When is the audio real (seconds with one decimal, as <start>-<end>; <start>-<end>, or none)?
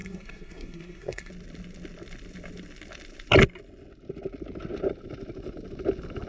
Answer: 1.3-6.3